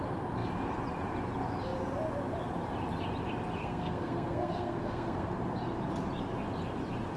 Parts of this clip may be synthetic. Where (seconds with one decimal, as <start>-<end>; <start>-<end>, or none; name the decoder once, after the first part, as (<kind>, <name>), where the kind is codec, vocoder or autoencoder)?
3.6-5.3 (codec, SNAC)